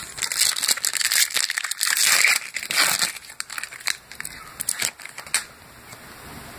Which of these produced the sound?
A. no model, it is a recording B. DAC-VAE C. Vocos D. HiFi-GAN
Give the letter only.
A